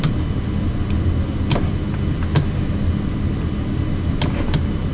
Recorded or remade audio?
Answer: recorded